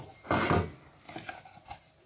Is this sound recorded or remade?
recorded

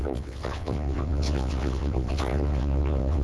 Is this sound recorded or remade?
remade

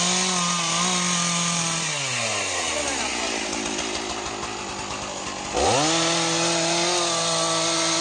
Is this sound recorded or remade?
recorded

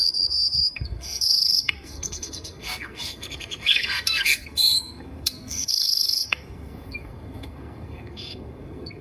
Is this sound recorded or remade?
remade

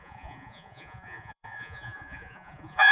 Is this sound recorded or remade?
remade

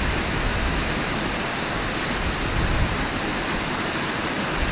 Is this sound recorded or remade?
recorded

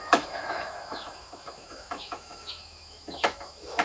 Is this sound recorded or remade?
remade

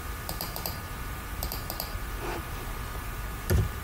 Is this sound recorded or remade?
remade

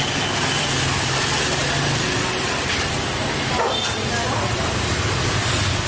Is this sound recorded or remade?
recorded